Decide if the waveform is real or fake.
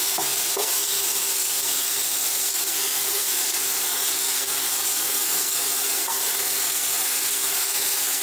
fake